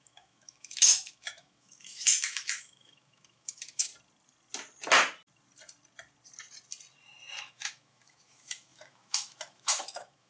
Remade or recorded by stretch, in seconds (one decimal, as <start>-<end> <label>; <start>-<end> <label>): 0.0-3.9 remade; 3.9-7.4 recorded; 7.4-10.3 remade

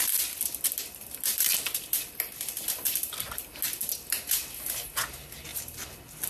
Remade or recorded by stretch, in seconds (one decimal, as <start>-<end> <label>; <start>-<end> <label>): 0.0-1.3 recorded; 1.3-3.6 remade; 3.6-6.3 recorded

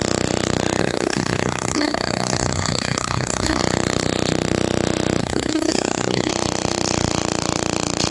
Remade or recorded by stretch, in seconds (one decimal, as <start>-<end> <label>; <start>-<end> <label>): 0.0-0.8 recorded; 0.8-3.6 remade; 3.6-5.2 recorded; 5.2-6.3 remade; 6.3-8.1 recorded

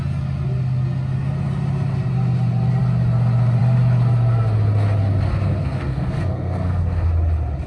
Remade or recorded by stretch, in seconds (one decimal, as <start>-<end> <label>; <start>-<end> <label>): 0.0-5.3 recorded; 5.3-7.1 remade; 7.1-7.7 recorded

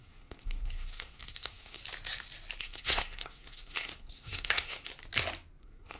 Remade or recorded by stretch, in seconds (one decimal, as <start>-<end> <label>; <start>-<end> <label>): 0.0-1.8 remade; 1.8-2.6 recorded; 2.6-4.9 remade; 4.9-5.6 recorded; 5.6-6.0 remade

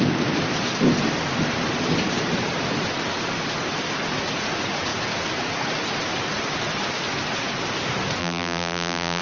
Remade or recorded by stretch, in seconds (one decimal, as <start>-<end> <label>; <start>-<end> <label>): 0.0-8.2 recorded; 8.2-9.2 remade

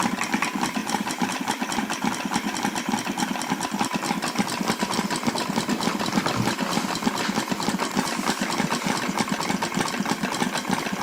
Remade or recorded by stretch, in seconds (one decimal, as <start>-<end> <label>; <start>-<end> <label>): 0.0-0.8 recorded; 0.8-1.4 remade; 1.4-11.0 recorded

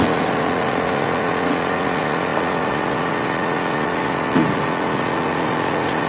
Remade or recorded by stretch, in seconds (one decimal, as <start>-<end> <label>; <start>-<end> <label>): 0.0-6.1 remade